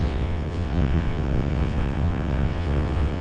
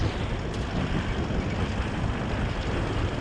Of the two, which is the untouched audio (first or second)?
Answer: second